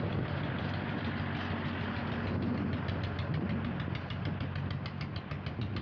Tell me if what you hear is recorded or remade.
recorded